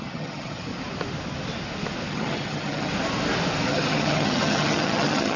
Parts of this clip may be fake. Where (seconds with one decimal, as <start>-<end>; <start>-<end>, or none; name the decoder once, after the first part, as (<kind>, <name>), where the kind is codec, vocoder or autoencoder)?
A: 0.0-0.7 (vocoder, HiFi-GAN); 2.1-2.9; 3.7-5.4